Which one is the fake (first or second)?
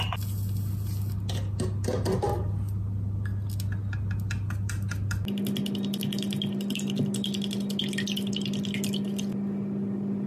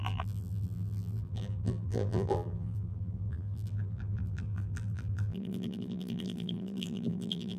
second